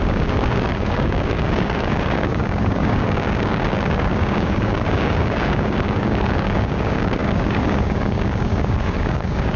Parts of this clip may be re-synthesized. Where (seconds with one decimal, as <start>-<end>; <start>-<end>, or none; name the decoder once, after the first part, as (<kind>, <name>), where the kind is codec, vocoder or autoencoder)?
0.0-9.6 (codec, DAC)